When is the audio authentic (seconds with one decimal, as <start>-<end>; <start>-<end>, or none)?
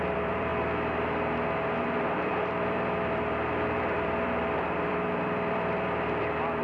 0.5-1.8